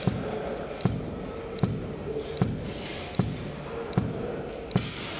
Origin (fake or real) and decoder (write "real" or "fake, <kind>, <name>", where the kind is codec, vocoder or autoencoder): real